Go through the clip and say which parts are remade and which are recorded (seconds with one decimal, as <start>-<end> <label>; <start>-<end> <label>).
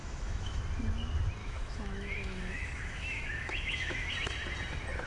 0.0-0.6 remade; 0.6-1.4 recorded; 1.4-4.1 remade; 4.1-5.1 recorded